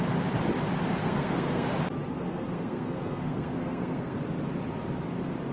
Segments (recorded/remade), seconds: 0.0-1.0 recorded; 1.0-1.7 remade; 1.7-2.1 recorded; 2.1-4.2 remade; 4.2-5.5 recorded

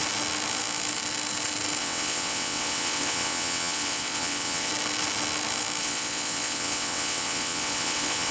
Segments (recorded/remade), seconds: 0.0-1.8 recorded; 1.8-4.7 remade; 4.7-5.8 recorded; 5.8-8.3 remade

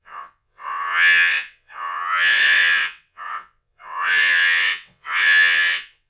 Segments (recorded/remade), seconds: 0.0-6.1 remade

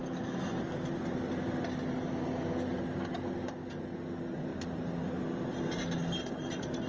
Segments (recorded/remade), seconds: 0.0-6.9 recorded

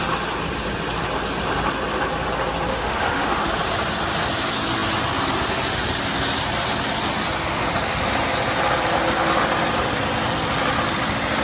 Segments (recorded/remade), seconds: 0.0-2.7 recorded; 2.7-3.5 remade; 3.5-11.4 recorded

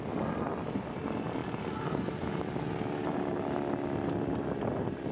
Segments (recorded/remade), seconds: 0.0-5.1 recorded

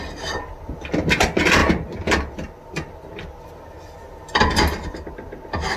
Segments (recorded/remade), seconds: 0.0-5.8 recorded